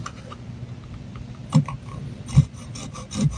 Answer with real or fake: real